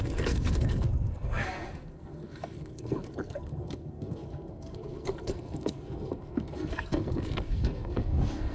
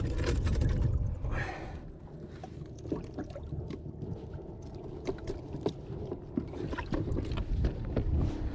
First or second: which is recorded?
second